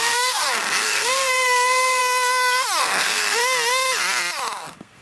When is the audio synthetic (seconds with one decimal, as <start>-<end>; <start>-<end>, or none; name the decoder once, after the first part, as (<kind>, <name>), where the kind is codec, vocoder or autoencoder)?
0.0-2.0 (codec, SNAC); 2.8-3.4; 4.6-5.0